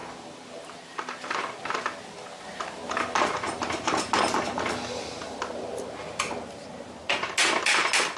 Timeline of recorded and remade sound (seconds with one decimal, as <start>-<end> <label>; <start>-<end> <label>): 0.0-2.8 remade; 2.8-5.0 recorded; 5.0-7.0 remade; 7.0-8.2 recorded